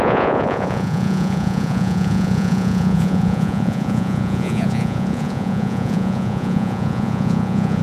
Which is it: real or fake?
fake